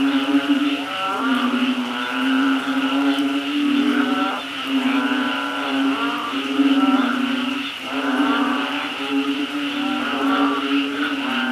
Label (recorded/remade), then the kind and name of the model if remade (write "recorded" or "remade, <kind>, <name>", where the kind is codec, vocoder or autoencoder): remade, vocoder, BigVGAN v2